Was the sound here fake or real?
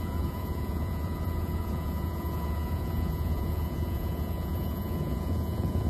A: fake